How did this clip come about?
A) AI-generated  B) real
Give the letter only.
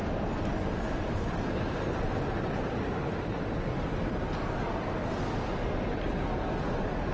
A